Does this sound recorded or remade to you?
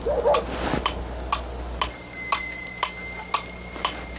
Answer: recorded